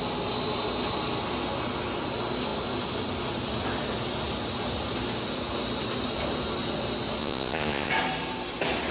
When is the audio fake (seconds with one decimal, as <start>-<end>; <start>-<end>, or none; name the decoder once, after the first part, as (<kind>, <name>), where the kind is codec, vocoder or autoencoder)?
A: 7.2-7.9 (vocoder, Vocos)